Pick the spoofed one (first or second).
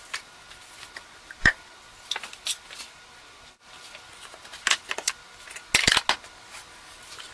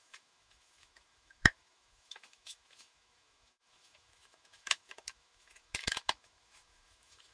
second